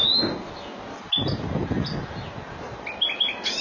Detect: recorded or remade recorded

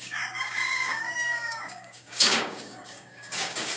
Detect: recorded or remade remade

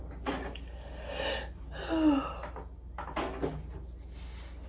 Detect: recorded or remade recorded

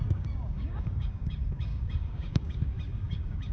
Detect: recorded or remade remade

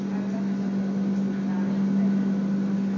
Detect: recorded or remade recorded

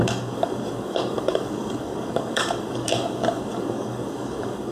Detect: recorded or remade remade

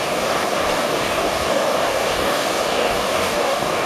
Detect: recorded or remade remade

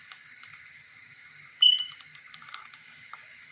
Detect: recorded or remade remade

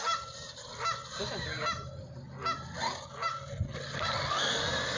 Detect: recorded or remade recorded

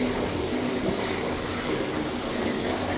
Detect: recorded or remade remade